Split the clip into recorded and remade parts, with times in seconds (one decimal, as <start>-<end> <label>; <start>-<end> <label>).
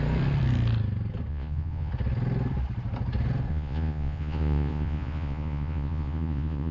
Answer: 0.0-1.3 recorded; 1.3-1.9 remade; 1.9-3.5 recorded; 3.5-6.7 remade